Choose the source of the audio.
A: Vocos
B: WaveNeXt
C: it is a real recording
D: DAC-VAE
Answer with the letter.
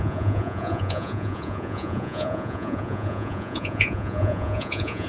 A